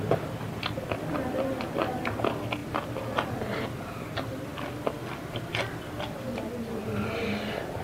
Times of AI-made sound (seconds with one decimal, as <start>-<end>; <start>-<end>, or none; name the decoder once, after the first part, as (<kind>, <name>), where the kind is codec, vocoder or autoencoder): none